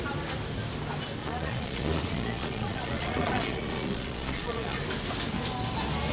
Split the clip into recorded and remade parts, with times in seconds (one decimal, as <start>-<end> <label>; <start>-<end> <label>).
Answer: 0.0-1.2 recorded; 1.2-4.8 remade; 4.8-6.1 recorded